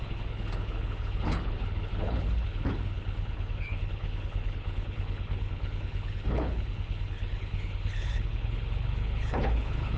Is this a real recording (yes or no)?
no